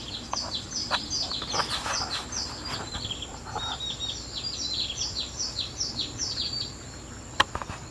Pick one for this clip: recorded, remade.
remade